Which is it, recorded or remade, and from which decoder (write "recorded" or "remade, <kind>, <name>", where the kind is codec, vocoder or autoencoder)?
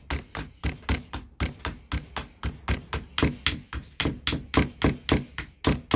recorded